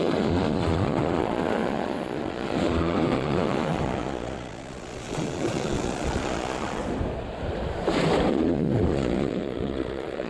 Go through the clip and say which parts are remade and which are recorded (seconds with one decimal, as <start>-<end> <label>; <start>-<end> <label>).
0.0-6.8 remade; 6.8-8.3 recorded; 8.3-10.3 remade